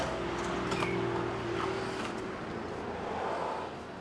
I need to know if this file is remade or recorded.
recorded